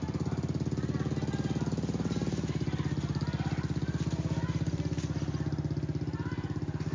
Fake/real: real